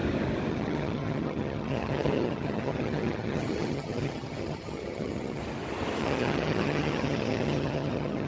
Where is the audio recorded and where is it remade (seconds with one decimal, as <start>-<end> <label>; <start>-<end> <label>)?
0.0-0.5 recorded; 0.5-5.4 remade; 5.4-6.0 recorded; 6.0-8.3 remade